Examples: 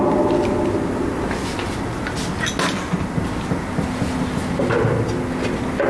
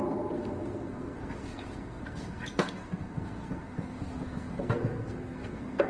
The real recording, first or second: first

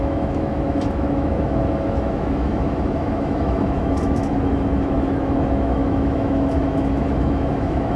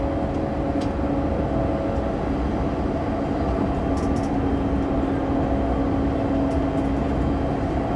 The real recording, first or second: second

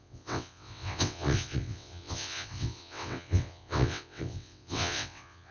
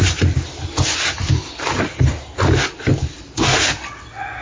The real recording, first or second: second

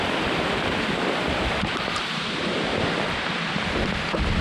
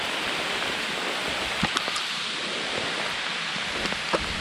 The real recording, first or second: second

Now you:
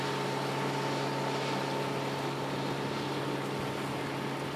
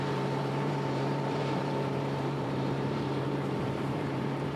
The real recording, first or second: first